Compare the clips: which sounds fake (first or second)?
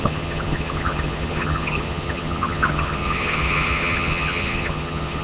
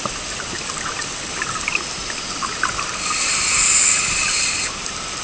first